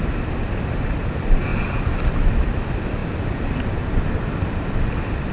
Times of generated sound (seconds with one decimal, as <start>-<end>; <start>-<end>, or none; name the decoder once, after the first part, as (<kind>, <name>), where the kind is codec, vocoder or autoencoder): none